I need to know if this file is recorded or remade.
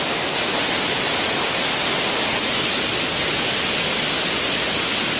recorded